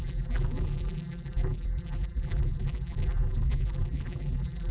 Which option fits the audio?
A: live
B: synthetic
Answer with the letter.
B